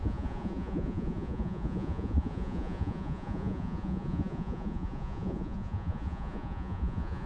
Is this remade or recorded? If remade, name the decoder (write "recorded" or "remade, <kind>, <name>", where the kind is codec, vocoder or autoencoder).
remade, vocoder, Vocos